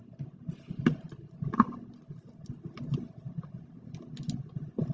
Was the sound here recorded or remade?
recorded